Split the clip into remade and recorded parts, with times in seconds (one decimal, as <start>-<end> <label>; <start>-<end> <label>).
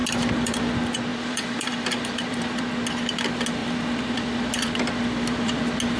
0.0-0.6 remade; 0.6-1.1 recorded; 1.1-2.7 remade; 2.7-3.6 recorded; 3.6-5.6 remade; 5.6-6.0 recorded